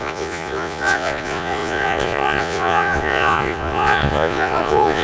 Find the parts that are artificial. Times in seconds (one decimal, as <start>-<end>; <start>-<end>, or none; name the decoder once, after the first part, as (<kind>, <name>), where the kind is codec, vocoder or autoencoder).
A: 0.0-5.0 (vocoder, Vocos)